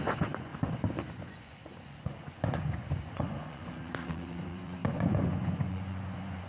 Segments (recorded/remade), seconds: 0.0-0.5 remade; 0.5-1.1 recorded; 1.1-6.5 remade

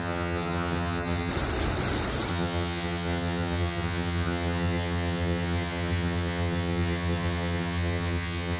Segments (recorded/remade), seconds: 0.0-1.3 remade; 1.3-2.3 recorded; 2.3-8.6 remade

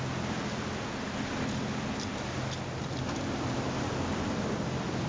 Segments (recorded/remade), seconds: 0.0-5.1 recorded

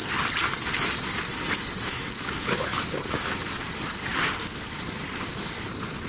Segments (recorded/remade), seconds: 0.0-1.9 recorded; 1.9-3.5 remade; 3.5-6.1 recorded

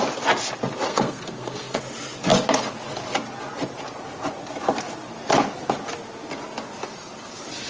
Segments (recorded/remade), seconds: 0.0-0.9 recorded; 0.9-1.8 remade; 1.8-7.7 recorded

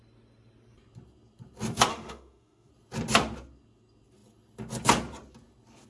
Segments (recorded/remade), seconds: 0.0-1.9 recorded; 1.9-2.7 remade; 2.7-5.9 recorded